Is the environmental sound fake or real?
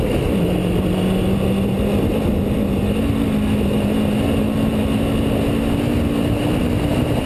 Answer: real